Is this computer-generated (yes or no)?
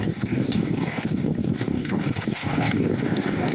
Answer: yes